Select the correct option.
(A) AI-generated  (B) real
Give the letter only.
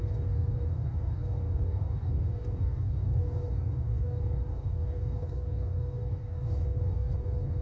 A